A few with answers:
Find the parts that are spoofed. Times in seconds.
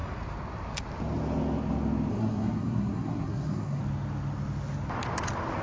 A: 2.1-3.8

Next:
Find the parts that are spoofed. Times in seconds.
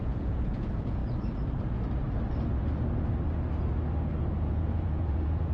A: 0.0-1.0; 4.3-5.5